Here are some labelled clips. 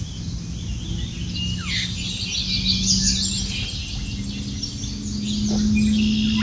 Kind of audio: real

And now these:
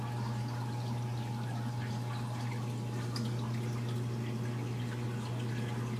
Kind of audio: real